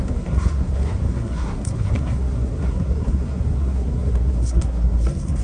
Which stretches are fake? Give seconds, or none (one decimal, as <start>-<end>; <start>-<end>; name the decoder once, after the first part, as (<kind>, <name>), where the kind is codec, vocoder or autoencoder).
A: 0.0-5.4 (codec, SNAC)